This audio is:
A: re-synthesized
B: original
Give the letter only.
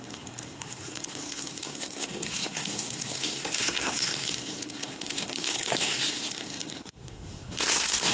A